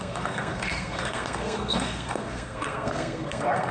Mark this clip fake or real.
fake